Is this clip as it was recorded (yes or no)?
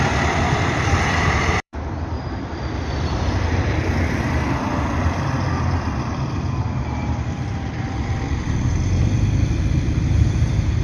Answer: no